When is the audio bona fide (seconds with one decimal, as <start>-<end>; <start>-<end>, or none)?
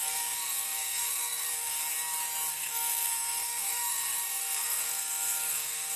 1.8-2.5